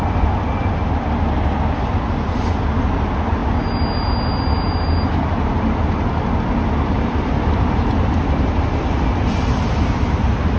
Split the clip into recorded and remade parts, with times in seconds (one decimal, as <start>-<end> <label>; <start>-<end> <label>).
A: 0.0-10.6 recorded